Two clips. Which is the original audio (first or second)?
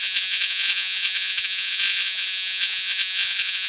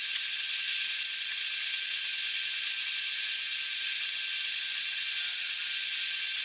second